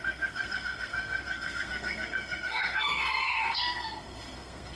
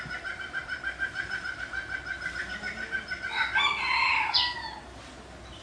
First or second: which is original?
second